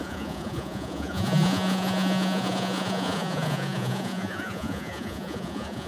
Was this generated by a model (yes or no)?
yes